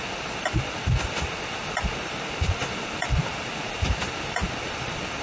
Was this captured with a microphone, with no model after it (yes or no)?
yes